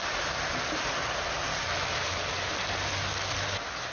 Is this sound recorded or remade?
recorded